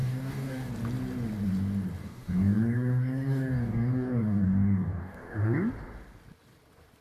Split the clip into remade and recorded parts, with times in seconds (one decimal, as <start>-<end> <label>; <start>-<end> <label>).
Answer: 0.0-0.7 remade; 0.7-2.0 recorded; 2.0-5.7 remade; 5.7-7.0 recorded